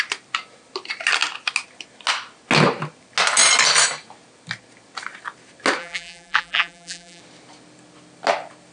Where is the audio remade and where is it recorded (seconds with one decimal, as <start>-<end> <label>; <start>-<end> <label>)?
0.0-5.8 recorded; 5.8-7.2 remade; 7.2-8.7 recorded